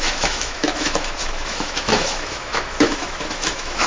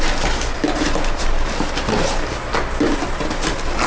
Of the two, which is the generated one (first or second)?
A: first